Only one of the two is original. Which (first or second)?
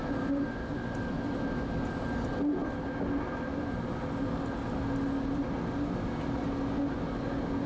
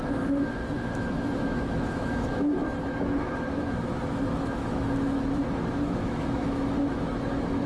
first